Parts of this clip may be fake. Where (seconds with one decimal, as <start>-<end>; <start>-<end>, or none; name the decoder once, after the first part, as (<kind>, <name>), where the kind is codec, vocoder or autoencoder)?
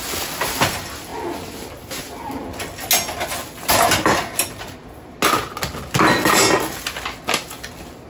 none